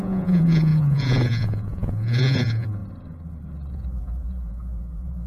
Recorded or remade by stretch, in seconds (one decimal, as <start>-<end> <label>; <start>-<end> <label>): 0.0-2.8 remade; 2.8-3.7 recorded; 3.7-5.3 remade